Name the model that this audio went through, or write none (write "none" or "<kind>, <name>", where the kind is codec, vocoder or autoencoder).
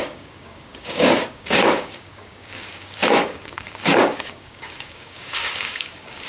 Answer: codec, DAC